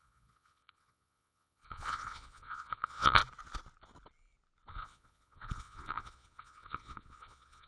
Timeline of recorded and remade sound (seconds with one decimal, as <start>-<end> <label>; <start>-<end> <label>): 0.0-3.2 remade; 3.2-4.7 recorded; 4.7-7.7 remade